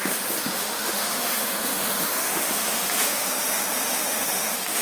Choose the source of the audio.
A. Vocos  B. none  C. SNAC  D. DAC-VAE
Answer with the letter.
D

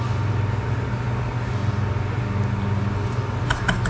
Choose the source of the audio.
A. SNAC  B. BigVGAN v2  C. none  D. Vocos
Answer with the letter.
C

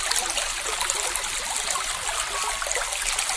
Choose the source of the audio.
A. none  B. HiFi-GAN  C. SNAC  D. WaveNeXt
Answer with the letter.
A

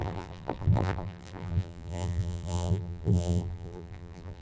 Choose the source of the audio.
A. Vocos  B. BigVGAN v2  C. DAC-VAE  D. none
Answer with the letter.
B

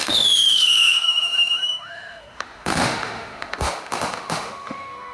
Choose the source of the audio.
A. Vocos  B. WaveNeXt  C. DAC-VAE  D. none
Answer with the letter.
C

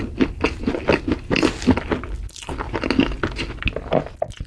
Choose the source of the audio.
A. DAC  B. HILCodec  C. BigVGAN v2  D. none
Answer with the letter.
D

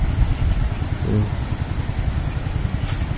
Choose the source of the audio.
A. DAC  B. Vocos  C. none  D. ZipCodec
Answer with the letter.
C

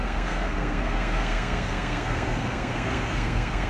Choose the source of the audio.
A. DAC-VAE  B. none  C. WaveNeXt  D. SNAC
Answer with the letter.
D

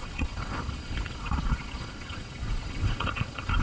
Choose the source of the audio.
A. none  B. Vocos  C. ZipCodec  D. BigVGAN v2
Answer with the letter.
B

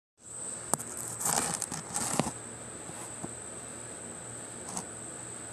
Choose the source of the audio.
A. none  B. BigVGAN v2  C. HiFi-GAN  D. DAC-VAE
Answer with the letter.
A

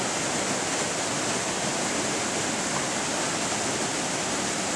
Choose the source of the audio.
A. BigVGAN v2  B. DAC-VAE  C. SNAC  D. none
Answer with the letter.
D